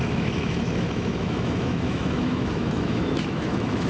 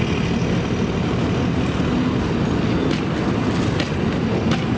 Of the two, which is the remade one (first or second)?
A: first